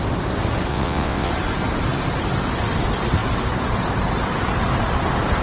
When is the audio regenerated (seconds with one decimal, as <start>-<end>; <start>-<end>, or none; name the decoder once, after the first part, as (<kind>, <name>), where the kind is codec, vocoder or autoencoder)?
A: 0.7-1.3 (vocoder, WaveNeXt)